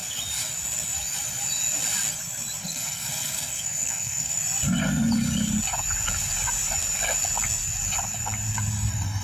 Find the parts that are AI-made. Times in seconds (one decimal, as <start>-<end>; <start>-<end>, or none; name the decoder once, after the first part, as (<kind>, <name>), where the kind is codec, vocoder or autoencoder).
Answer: 2.6-4.4 (codec, SNAC)